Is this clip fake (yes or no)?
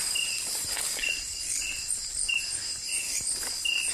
no